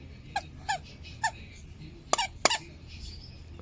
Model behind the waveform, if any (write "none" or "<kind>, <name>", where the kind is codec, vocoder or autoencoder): none